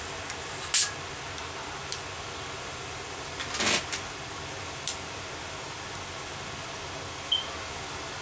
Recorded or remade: recorded